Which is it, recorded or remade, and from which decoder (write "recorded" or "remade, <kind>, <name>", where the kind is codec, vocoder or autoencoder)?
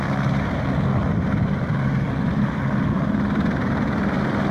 recorded